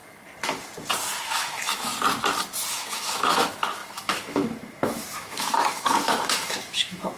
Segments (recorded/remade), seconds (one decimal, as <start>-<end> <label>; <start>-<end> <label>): 0.0-1.2 recorded; 1.2-1.9 remade; 1.9-2.7 recorded; 2.7-7.2 remade